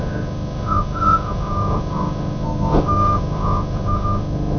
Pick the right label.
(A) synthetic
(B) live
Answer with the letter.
A